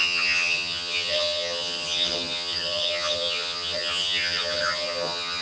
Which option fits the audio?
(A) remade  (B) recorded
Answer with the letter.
A